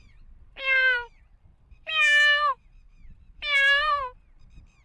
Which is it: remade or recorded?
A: remade